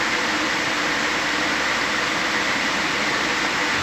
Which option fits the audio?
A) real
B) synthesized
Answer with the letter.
A